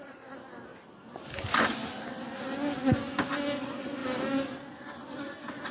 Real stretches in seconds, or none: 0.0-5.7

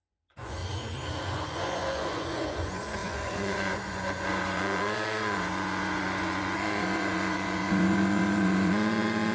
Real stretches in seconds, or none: 0.6-1.2

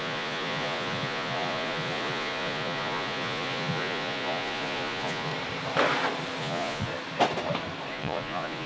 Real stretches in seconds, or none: 5.3-6.4; 6.9-7.9

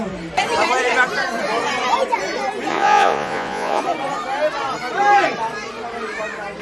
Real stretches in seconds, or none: 0.0-2.7; 3.8-6.6

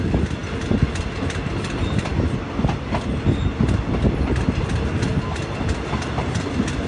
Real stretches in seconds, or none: 0.0-6.9